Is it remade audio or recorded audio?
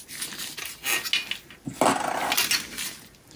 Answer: recorded